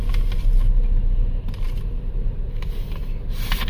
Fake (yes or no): no